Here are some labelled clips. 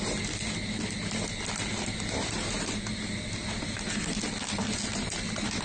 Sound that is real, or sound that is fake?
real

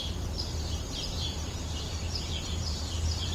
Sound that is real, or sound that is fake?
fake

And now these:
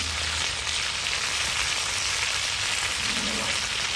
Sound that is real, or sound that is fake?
real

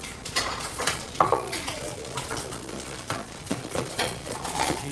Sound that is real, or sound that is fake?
fake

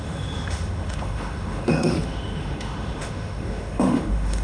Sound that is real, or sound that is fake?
fake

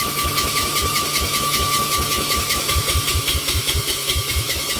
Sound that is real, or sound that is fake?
fake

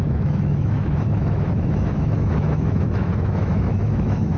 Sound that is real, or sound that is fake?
fake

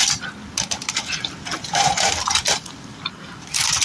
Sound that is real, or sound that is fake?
real